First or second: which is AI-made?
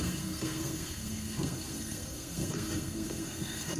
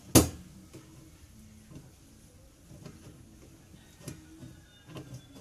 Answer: first